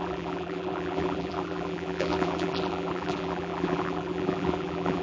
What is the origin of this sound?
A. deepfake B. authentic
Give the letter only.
A